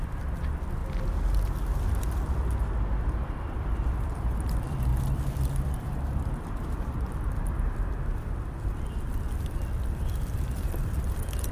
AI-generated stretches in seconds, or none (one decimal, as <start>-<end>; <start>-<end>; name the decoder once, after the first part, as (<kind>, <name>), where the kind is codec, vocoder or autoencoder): 0.0-0.8 (vocoder, BigVGAN v2); 1.8-11.5